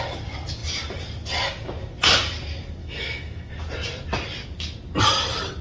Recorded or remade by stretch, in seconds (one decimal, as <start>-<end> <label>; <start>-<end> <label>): 0.0-2.8 recorded; 2.8-3.5 remade; 3.5-5.6 recorded